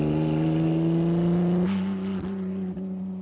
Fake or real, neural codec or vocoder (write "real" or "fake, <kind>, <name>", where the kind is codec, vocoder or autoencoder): real